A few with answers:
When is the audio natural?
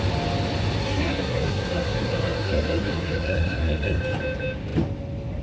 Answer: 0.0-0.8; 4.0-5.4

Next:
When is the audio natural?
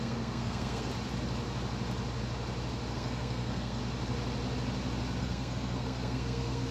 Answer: 0.9-2.9; 3.8-5.2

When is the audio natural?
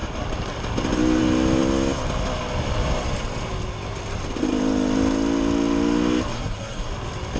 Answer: 0.0-6.3; 6.9-7.4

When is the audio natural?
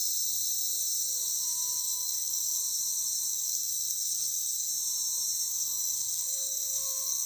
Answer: 0.0-1.8; 2.6-3.3; 4.7-5.5